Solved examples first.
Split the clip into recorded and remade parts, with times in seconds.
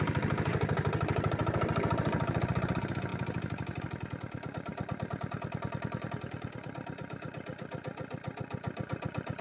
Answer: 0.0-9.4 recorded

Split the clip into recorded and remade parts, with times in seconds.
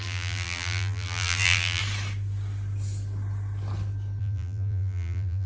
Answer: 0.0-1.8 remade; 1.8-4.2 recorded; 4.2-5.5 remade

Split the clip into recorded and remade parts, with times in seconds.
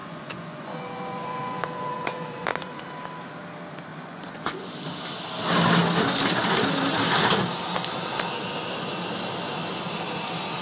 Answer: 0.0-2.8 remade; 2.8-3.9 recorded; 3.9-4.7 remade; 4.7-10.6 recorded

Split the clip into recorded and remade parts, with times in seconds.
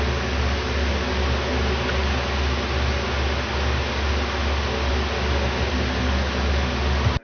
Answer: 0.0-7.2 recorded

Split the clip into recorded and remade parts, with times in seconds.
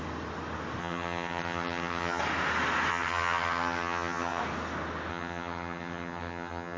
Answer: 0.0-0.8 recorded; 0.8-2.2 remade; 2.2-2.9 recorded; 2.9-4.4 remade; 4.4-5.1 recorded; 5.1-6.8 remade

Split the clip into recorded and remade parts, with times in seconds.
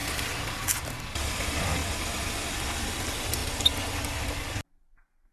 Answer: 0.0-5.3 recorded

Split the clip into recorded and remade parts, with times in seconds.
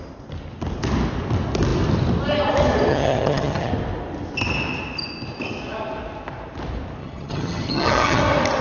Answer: 0.0-2.9 recorded; 2.9-3.7 remade; 3.7-7.0 recorded; 7.0-8.2 remade; 8.2-8.6 recorded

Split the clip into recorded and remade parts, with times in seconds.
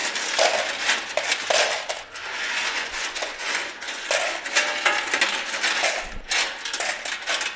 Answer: 0.0-2.2 recorded; 2.2-4.1 remade; 4.1-7.6 recorded